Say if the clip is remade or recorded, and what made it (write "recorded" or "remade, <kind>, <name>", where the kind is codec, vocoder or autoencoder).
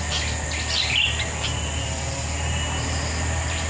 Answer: remade, vocoder, BigVGAN v2